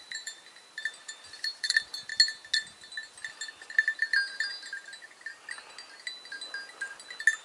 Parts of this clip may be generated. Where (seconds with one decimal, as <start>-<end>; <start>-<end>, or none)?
0.0-2.1; 3.4-4.5